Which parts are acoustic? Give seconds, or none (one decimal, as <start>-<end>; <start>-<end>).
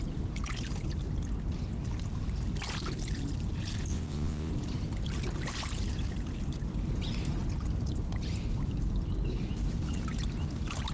0.0-3.9; 4.5-10.9